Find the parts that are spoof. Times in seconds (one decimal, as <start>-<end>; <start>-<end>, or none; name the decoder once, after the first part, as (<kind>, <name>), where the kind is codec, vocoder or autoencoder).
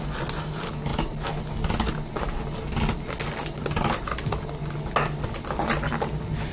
none